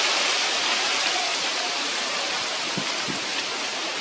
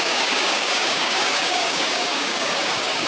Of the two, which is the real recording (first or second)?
first